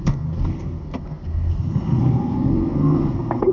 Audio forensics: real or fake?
fake